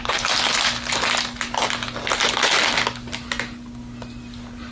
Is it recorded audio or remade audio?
recorded